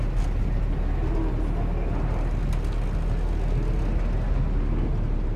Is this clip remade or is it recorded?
recorded